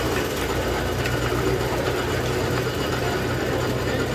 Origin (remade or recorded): recorded